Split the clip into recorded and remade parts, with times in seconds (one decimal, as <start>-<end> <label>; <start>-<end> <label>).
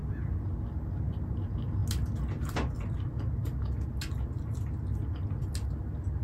0.0-6.2 recorded